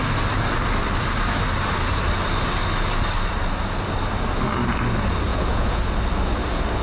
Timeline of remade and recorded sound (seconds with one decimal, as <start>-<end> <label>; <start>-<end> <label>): 0.0-5.3 recorded; 5.3-5.8 remade; 5.8-6.8 recorded